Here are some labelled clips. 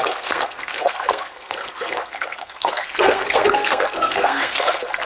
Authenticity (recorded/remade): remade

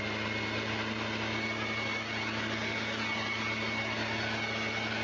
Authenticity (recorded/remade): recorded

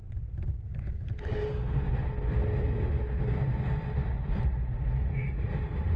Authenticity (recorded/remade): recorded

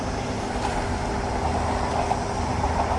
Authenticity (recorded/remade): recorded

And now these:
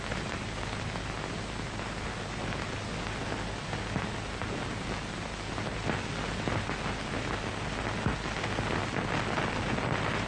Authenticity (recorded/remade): recorded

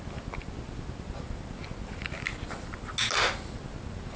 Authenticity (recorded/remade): recorded